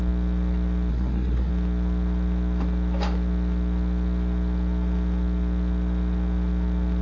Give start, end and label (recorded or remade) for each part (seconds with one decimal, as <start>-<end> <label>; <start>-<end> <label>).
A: 0.0-0.9 recorded; 0.9-1.5 remade; 1.5-7.0 recorded